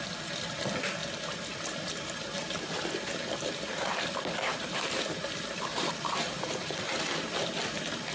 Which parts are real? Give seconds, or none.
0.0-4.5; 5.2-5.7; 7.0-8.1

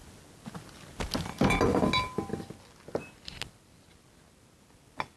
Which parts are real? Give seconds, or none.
0.0-5.2

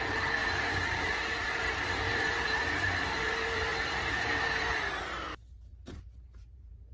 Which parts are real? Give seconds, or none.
none

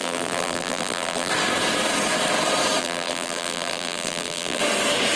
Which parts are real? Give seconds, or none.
1.3-2.8; 4.6-5.2